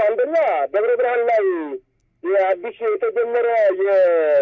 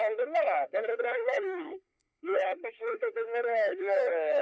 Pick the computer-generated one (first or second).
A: second